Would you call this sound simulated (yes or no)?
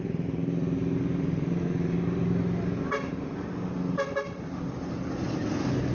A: no